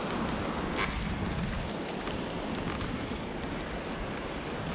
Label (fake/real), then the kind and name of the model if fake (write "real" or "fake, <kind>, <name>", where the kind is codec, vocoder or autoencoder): real